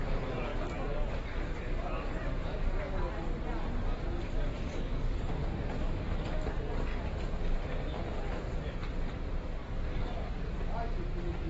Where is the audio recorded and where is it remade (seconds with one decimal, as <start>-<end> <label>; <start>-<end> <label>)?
0.0-0.5 recorded; 0.5-3.1 remade; 3.1-4.7 recorded; 4.7-5.3 remade; 5.3-9.6 recorded; 9.6-10.4 remade; 10.4-11.5 recorded